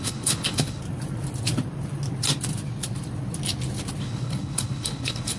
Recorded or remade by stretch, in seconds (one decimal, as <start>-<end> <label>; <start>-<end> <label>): 0.0-0.8 remade; 0.8-4.0 recorded; 4.0-5.4 remade